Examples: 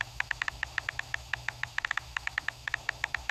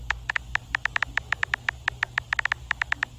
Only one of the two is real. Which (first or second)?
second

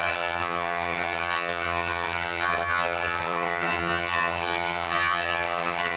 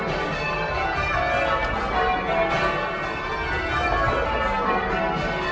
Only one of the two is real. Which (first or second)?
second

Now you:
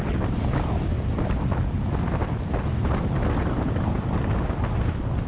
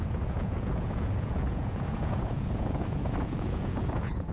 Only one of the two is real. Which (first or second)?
first